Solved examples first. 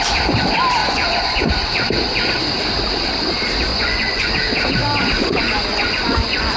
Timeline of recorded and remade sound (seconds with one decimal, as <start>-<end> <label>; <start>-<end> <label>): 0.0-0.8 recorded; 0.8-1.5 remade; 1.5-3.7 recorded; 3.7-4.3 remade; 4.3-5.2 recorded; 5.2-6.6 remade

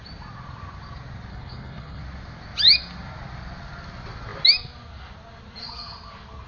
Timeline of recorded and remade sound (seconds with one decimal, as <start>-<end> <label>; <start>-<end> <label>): 0.0-1.3 recorded; 1.3-2.0 remade; 2.0-6.5 recorded

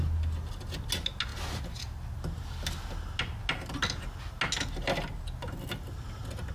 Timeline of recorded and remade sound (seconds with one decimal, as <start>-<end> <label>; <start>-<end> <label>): 0.0-6.5 recorded

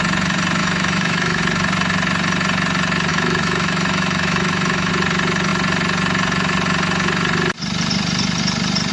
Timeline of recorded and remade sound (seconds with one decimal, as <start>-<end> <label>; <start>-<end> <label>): 0.0-0.6 recorded; 0.6-1.4 remade; 1.4-3.1 recorded; 3.1-4.9 remade; 4.9-8.9 recorded